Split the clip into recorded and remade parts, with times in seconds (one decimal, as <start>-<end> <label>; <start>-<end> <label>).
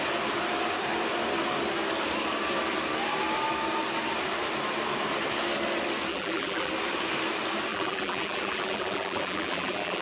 0.0-6.1 recorded; 6.1-6.7 remade; 6.7-7.7 recorded; 7.7-10.0 remade